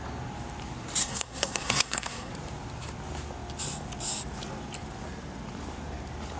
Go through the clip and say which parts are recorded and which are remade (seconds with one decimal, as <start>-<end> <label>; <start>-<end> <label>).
0.0-1.0 recorded; 1.0-2.3 remade; 2.3-6.4 recorded